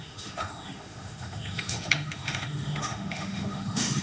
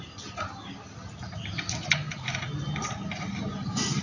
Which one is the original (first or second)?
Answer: second